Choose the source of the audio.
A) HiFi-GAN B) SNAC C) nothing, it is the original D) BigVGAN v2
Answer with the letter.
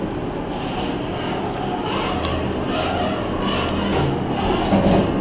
C